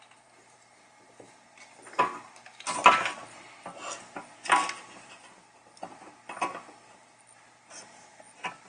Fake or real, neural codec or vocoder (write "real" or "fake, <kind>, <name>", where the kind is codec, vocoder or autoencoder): real